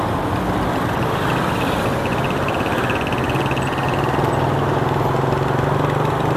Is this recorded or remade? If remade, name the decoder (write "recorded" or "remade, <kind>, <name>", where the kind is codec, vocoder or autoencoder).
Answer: recorded